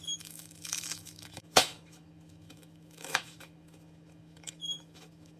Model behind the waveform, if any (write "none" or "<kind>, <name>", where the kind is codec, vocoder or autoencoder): autoencoder, DAC-VAE